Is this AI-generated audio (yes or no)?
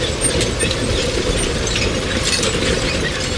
no